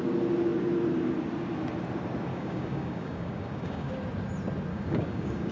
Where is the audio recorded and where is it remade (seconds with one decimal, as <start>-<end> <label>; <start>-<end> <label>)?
0.0-2.3 recorded; 2.3-3.9 remade; 3.9-4.7 recorded; 4.7-5.5 remade